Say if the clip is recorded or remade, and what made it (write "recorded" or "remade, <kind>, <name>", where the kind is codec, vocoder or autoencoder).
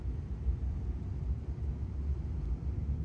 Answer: recorded